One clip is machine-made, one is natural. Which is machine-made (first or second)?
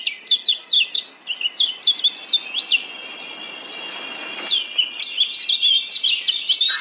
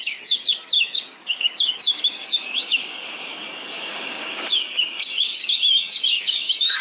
second